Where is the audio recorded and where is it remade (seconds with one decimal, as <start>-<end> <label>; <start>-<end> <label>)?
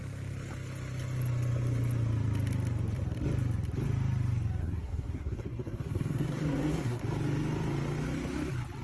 0.0-4.6 recorded; 4.6-7.0 remade; 7.0-8.8 recorded